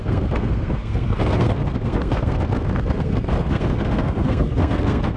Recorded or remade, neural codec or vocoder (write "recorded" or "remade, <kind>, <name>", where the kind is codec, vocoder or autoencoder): remade, codec, SNAC